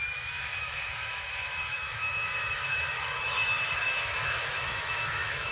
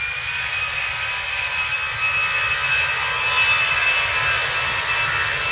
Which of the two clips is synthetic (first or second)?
first